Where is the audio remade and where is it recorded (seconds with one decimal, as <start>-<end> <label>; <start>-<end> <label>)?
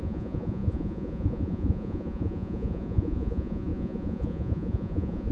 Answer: 0.0-5.3 remade